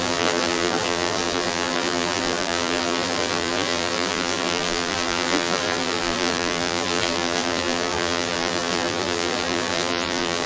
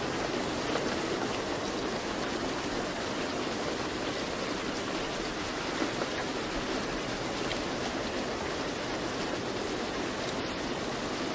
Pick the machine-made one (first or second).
first